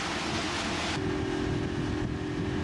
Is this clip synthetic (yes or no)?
no